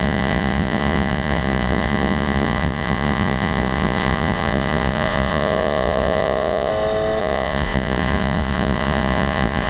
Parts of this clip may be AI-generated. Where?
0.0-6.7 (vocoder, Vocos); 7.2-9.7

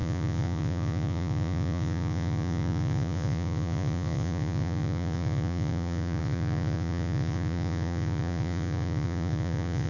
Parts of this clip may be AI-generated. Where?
0.0-9.9 (vocoder, Vocos)